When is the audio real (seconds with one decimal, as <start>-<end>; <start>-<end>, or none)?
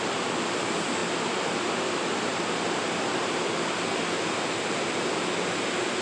0.0-6.0